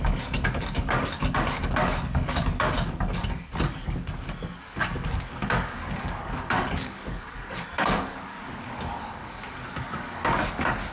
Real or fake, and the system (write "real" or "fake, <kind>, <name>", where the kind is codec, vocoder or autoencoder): fake, codec, DAC